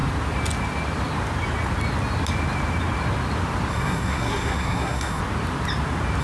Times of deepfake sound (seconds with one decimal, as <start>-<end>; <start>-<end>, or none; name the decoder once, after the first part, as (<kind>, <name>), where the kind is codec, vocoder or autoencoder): 3.7-5.2 (codec, SNAC)